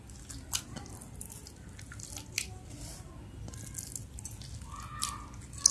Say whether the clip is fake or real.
real